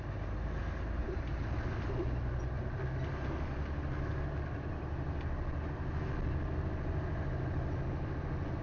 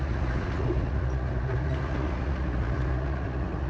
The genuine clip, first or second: first